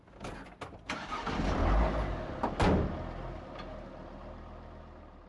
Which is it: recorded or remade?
recorded